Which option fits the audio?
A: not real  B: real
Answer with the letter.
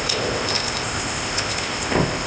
A